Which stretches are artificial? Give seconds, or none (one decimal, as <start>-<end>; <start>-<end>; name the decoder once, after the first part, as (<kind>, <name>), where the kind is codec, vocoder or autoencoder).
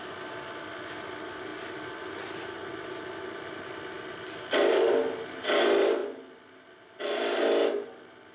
6.0-7.0 (vocoder, BigVGAN v2)